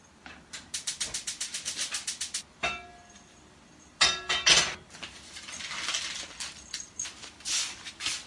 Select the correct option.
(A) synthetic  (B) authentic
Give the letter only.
B